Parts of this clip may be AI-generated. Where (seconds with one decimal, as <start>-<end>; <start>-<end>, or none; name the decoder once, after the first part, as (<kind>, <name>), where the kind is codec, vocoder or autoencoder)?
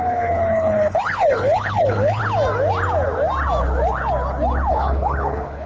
0.0-2.2 (codec, HILCodec); 4.7-5.7